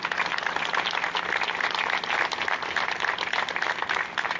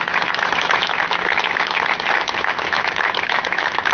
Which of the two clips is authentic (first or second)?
first